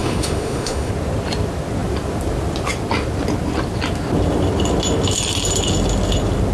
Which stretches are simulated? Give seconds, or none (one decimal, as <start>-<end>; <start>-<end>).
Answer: 0.0-0.9